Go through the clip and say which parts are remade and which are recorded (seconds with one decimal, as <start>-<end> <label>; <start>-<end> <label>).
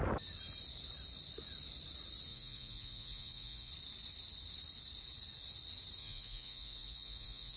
0.0-2.3 recorded; 2.3-3.7 remade; 3.7-6.0 recorded; 6.0-7.6 remade